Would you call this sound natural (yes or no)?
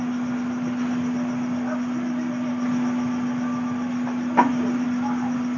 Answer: yes